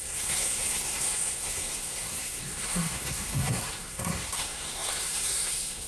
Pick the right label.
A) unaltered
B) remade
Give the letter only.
B